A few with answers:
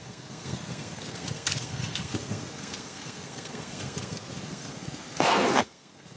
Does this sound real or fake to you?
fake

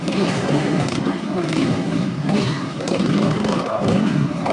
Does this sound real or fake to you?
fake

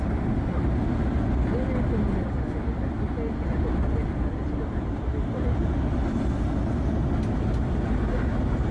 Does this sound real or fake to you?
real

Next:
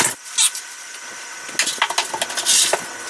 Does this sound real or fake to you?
real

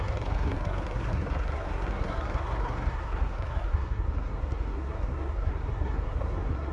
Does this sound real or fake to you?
fake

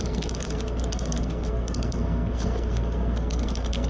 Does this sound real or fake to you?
fake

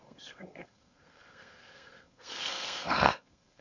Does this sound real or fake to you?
fake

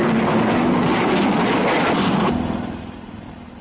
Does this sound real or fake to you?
real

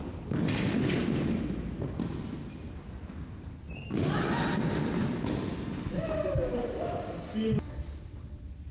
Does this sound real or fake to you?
real